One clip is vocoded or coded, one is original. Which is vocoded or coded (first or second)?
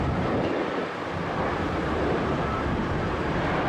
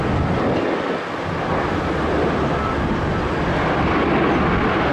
first